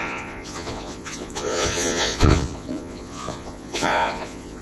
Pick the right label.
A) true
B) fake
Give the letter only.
B